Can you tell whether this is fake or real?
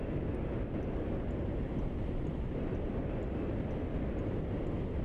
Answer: real